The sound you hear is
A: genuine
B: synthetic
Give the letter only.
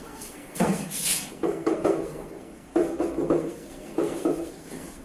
B